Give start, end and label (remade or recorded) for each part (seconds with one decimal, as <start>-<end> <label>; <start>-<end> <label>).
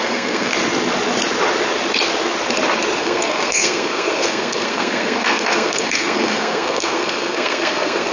0.0-0.5 remade; 0.5-3.0 recorded; 3.0-8.1 remade